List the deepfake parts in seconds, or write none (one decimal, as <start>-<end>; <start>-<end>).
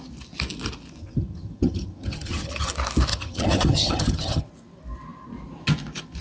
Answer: 1.0-2.7; 3.1-4.4